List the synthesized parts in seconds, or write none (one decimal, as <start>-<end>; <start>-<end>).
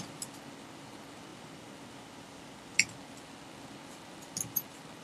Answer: none